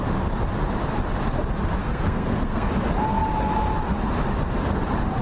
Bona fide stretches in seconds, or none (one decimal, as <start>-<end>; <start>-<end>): 0.0-1.8; 2.7-5.2